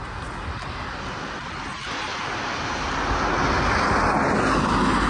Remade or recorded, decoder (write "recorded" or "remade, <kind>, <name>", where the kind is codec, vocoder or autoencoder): recorded